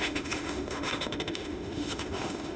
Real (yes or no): no